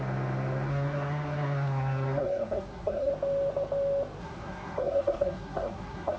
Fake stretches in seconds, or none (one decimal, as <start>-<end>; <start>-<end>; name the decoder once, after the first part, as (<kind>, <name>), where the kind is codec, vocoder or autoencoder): 0.7-3.1 (codec, SNAC); 4.2-6.2